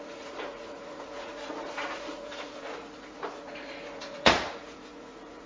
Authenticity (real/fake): fake